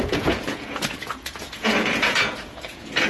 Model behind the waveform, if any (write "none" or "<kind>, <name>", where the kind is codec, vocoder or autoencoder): vocoder, Vocos